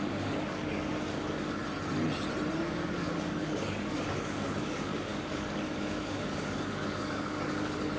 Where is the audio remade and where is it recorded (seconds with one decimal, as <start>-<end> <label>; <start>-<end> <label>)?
0.0-1.6 remade; 1.6-2.6 recorded; 2.6-8.0 remade